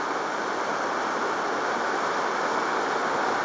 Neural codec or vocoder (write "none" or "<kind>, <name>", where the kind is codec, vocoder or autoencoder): none